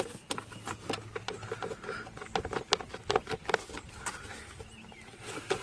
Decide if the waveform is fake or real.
real